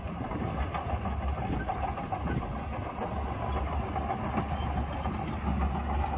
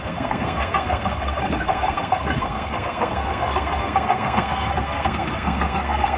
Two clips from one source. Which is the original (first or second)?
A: first